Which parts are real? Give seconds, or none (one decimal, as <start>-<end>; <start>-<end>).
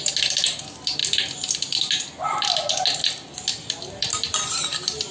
0.0-5.1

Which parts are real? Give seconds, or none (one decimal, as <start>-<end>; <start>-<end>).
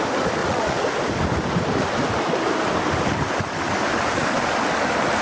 0.0-0.4; 1.0-5.2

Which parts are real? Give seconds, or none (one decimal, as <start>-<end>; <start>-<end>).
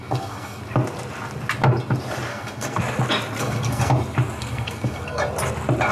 0.6-2.3; 2.8-3.4; 3.9-4.4; 5.2-5.9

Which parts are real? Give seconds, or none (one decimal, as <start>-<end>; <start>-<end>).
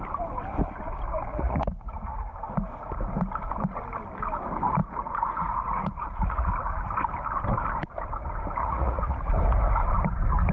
0.0-1.3; 1.9-4.8; 6.5-8.6; 9.3-10.5